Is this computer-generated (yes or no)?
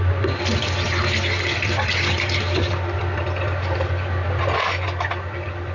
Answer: no